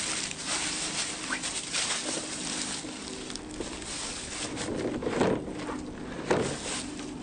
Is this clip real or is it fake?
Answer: real